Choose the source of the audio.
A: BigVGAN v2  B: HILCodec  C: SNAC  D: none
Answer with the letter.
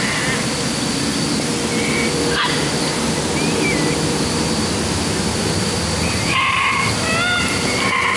D